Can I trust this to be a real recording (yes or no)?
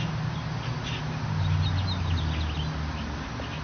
yes